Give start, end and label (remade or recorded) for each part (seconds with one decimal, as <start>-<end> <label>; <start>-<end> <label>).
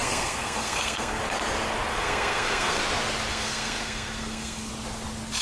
0.0-1.2 remade; 1.2-1.9 recorded; 1.9-2.8 remade; 2.8-3.3 recorded; 3.3-4.7 remade; 4.7-5.4 recorded